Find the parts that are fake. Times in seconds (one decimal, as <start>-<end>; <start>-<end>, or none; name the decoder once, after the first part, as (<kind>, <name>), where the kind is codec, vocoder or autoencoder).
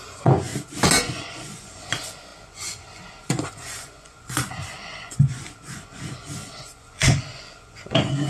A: 0.0-0.5 (vocoder, Vocos); 1.0-8.3